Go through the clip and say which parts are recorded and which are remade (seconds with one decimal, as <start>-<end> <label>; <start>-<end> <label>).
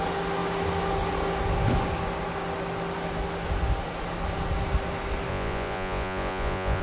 0.0-5.3 recorded; 5.3-6.8 remade